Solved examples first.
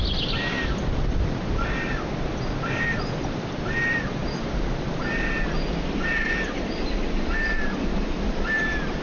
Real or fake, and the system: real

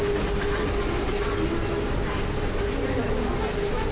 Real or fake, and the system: real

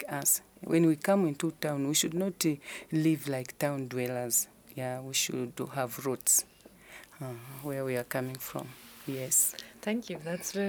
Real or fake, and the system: real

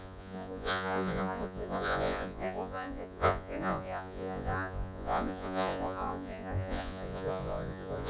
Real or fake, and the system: fake, vocoder, Vocos